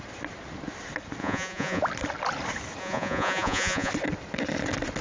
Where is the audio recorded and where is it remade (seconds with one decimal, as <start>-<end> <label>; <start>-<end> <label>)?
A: 0.0-1.2 recorded; 1.2-1.8 remade; 1.8-2.8 recorded; 2.8-3.9 remade; 3.9-5.0 recorded